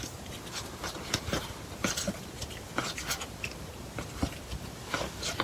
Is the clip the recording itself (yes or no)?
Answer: yes